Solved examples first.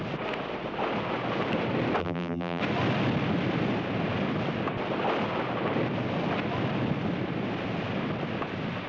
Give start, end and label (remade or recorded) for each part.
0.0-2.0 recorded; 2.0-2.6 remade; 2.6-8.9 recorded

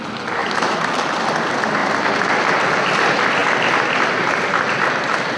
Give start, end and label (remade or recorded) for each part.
0.0-0.4 recorded; 0.4-1.1 remade; 1.1-5.4 recorded

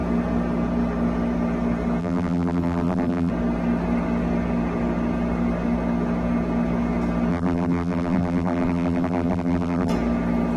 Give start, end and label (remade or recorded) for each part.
0.0-2.0 recorded; 2.0-3.3 remade; 3.3-7.3 recorded; 7.3-9.9 remade; 9.9-10.6 recorded

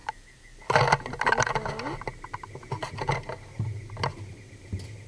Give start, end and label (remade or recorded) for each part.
0.0-5.1 recorded